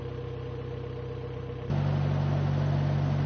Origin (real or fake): real